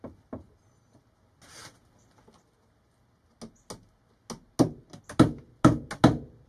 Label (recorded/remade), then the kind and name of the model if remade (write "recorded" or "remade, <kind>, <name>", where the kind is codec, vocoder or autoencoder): recorded